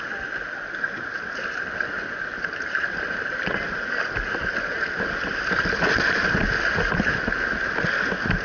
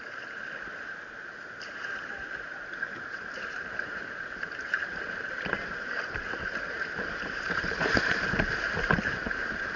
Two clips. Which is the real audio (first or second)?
first